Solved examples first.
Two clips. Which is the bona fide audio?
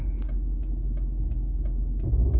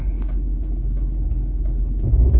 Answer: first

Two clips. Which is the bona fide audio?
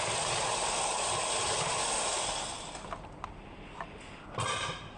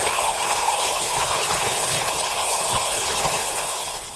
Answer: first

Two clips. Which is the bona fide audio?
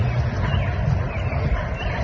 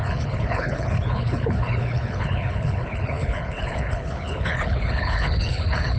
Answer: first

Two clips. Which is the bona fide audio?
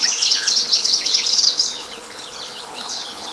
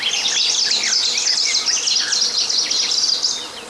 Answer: second